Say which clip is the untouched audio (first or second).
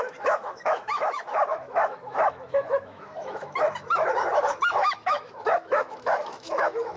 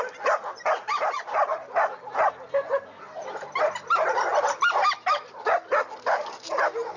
second